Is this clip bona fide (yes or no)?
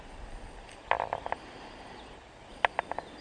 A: yes